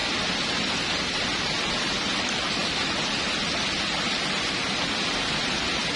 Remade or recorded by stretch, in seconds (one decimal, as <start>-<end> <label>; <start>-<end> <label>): 0.0-6.0 recorded